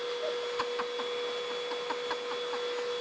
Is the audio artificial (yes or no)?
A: no